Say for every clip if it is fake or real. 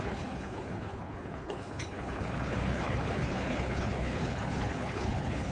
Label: fake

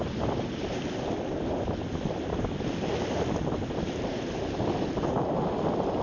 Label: real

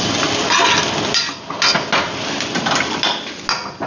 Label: real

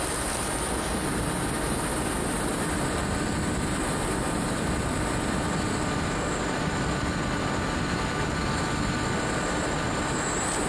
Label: real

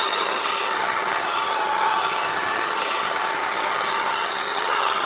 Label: fake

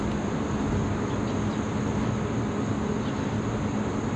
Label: real